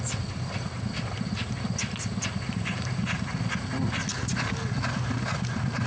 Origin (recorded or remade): recorded